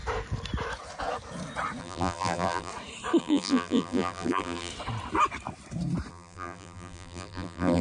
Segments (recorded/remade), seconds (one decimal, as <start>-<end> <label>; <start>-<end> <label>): 0.0-1.8 recorded; 1.8-2.7 remade; 2.7-3.2 recorded; 3.2-4.7 remade; 4.7-6.1 recorded; 6.1-7.8 remade